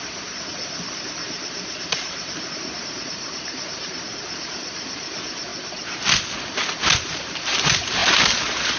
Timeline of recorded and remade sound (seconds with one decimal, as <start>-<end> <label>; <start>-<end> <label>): 0.0-5.5 remade; 5.5-7.0 recorded; 7.0-8.8 remade

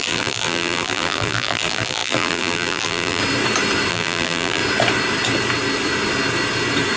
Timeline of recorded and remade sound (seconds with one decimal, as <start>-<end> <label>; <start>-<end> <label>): 0.0-3.2 remade; 3.2-3.9 recorded; 3.9-4.6 remade; 4.6-7.0 recorded